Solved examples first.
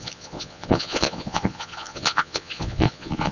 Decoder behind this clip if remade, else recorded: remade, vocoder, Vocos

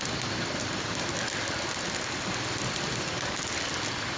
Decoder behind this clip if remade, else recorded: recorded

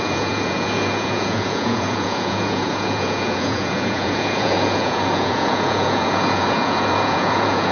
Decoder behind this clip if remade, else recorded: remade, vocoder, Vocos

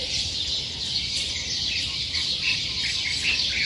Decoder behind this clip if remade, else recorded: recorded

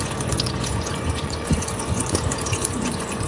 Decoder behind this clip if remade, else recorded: remade, vocoder, Vocos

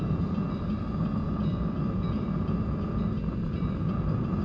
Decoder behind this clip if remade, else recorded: recorded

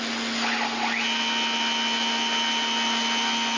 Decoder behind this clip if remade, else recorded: recorded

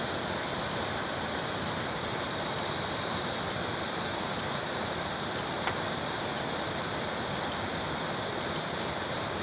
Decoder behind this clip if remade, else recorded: recorded